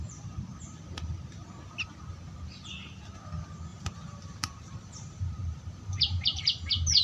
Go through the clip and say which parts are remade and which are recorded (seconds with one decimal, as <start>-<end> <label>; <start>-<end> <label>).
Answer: 0.0-3.7 recorded; 3.7-6.4 remade; 6.4-7.0 recorded